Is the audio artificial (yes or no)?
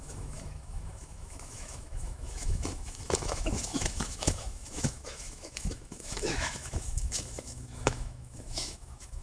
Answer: yes